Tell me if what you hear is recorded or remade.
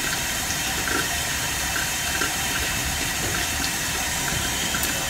remade